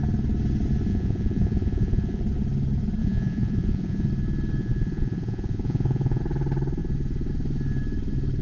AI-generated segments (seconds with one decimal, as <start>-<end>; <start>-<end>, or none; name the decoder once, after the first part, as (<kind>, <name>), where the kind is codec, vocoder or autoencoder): 0.9-2.2 (vocoder, Vocos); 3.0-4.1; 4.6-6.2